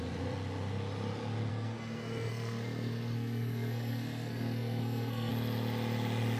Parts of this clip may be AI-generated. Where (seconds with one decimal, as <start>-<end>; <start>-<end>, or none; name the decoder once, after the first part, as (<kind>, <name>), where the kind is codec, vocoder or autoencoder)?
1.5-5.3 (codec, SNAC)

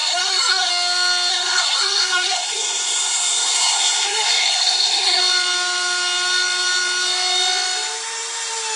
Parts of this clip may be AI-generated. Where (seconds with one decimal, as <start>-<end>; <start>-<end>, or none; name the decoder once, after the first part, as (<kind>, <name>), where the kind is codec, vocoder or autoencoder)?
0.0-0.7 (codec, SNAC); 1.3-5.2

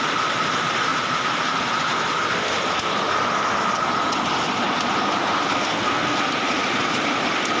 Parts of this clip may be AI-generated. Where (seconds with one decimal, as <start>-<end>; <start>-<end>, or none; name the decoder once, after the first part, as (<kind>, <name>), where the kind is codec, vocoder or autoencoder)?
5.5-6.2 (codec, SNAC)